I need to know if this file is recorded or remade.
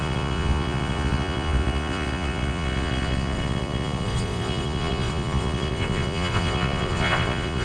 remade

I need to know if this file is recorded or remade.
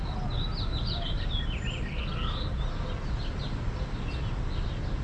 recorded